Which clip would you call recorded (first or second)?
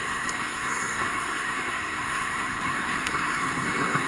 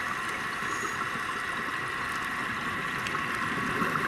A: second